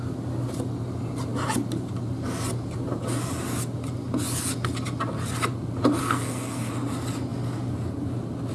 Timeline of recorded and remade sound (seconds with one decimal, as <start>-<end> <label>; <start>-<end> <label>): 0.0-6.0 recorded; 6.0-6.7 remade; 6.7-8.5 recorded